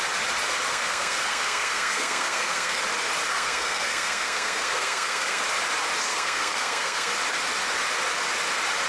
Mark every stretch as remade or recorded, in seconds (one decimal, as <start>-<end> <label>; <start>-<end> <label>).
0.0-0.7 recorded; 0.7-2.8 remade; 2.8-3.3 recorded; 3.3-5.4 remade; 5.4-6.1 recorded; 6.1-7.1 remade; 7.1-8.9 recorded